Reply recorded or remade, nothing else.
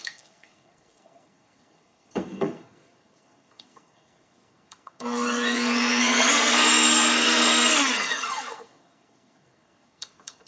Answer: remade